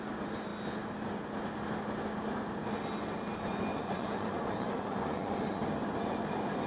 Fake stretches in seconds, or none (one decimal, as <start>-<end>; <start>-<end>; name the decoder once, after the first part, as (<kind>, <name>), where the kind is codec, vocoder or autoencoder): 3.7-5.6 (vocoder, Vocos)